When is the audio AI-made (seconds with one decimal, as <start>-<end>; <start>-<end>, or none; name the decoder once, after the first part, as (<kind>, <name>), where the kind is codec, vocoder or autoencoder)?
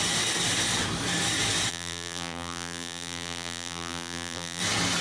1.7-4.6 (vocoder, BigVGAN v2)